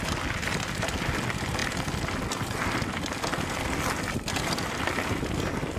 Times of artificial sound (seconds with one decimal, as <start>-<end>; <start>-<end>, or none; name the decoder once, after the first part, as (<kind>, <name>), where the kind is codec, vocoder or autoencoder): none